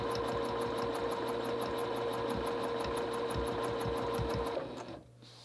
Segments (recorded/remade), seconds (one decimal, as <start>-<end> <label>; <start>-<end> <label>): 0.0-5.4 recorded